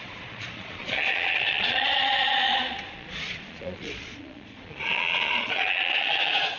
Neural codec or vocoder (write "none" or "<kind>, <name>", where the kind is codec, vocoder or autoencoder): vocoder, Vocos